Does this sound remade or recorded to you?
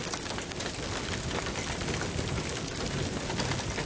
recorded